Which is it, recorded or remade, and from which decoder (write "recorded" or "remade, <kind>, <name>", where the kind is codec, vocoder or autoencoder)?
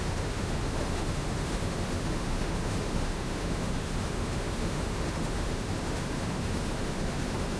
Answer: remade, autoencoder, DAC-VAE